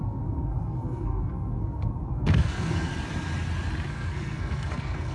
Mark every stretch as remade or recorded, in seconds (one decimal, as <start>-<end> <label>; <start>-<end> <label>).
0.0-2.9 remade; 2.9-3.9 recorded; 3.9-5.1 remade